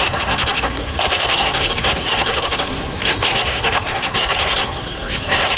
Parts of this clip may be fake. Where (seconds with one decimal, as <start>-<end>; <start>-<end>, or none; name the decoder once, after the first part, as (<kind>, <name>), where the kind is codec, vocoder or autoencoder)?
0.0-5.6 (codec, SNAC)